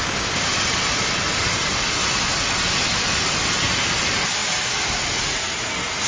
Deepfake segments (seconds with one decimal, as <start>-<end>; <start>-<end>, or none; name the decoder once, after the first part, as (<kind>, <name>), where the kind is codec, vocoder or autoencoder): 0.0-0.5 (codec, DAC)